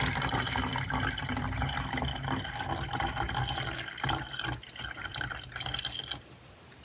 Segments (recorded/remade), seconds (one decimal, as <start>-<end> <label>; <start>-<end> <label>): 0.0-6.8 recorded